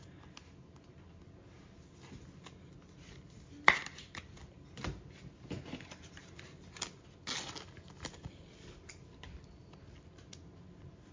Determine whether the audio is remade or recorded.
recorded